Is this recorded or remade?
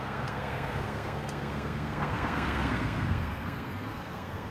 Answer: remade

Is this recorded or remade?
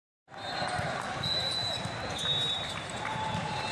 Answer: remade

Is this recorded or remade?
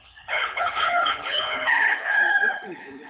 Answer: remade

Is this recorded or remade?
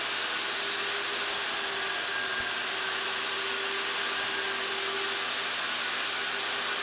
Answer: recorded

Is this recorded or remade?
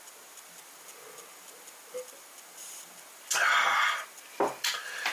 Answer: recorded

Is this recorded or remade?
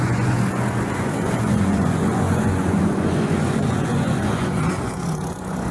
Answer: remade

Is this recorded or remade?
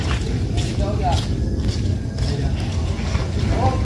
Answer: recorded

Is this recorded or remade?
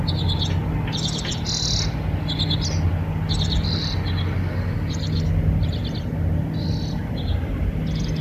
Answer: recorded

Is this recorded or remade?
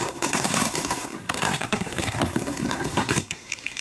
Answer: remade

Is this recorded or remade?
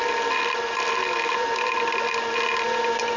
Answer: recorded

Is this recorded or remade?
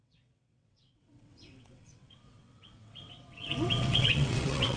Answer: remade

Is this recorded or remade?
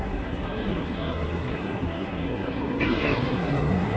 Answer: remade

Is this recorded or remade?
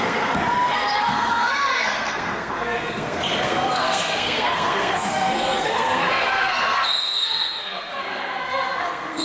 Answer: remade